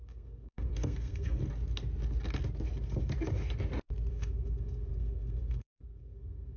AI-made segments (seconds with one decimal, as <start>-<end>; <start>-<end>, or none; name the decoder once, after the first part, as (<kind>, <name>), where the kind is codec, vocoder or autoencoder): 0.0-1.4 (codec, SNAC); 4.1-6.6

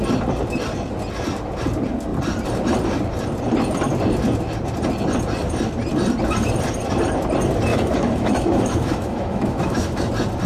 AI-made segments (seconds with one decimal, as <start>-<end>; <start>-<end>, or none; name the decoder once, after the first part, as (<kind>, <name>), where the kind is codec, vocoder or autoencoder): 7.7-10.1 (autoencoder, DAC-VAE)

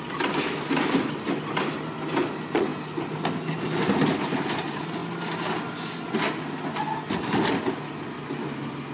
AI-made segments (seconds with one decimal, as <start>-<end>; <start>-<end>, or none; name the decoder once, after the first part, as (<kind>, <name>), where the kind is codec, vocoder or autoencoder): none

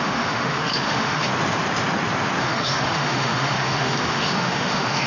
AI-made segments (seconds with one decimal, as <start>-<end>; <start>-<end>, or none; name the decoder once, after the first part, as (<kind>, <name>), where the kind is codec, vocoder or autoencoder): 0.0-1.3 (autoencoder, DAC-VAE); 2.4-5.1

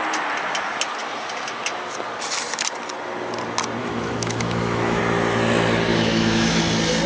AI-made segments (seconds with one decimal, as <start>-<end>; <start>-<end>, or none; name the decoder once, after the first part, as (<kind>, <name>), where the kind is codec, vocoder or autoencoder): 3.8-5.0 (autoencoder, DAC-VAE); 5.9-6.6